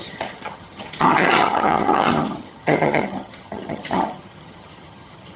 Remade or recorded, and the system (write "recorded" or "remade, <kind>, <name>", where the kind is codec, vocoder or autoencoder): remade, vocoder, HiFi-GAN